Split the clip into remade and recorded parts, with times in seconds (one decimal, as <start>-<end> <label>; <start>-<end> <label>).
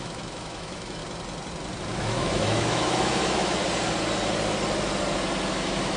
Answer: 0.0-1.0 remade; 1.0-2.0 recorded; 2.0-3.6 remade; 3.6-5.5 recorded; 5.5-6.0 remade